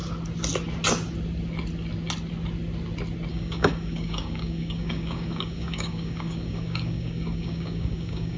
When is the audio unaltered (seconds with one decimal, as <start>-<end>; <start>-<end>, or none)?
0.0-3.3